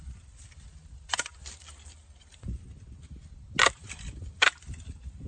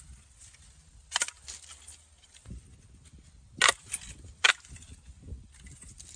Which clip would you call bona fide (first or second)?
second